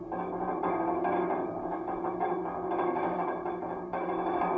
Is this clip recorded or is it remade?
remade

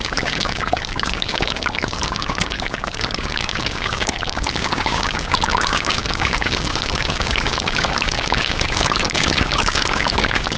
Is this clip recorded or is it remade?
remade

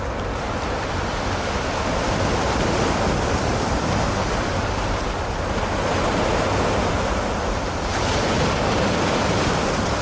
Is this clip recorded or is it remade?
recorded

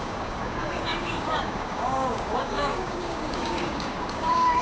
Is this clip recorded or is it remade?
remade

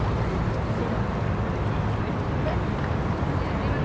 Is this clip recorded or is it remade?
recorded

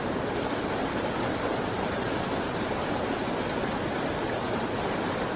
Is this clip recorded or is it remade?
recorded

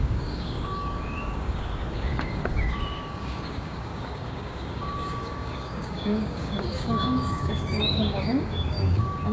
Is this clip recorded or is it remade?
remade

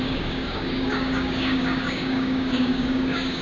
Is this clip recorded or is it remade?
remade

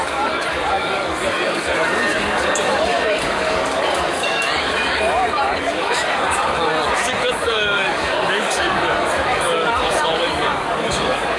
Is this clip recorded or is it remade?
remade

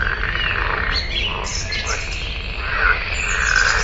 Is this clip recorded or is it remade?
recorded